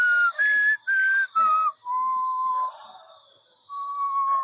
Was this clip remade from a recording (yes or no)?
no